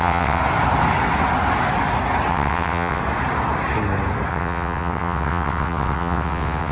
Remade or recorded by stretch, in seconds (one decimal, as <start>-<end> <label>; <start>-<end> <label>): 0.0-0.4 remade; 0.4-2.3 recorded; 2.3-3.0 remade; 3.0-4.3 recorded; 4.3-6.7 remade